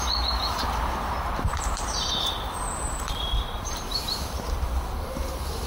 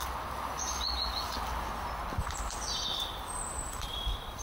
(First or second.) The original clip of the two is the second